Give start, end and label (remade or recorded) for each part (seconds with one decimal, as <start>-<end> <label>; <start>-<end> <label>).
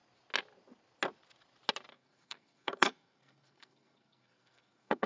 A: 0.0-1.9 recorded; 1.9-5.1 remade